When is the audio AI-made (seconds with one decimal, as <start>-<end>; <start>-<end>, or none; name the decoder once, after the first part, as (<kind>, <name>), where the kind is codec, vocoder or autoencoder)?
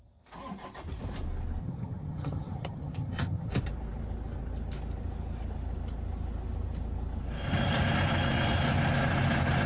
1.6-3.5 (vocoder, HiFi-GAN)